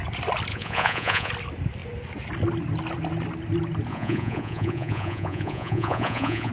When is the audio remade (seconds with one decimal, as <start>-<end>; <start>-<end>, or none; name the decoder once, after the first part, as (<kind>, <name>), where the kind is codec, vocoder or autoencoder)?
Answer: 0.5-1.3 (vocoder, Vocos); 3.9-6.5